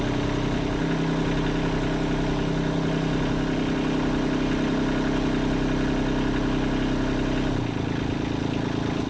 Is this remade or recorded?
recorded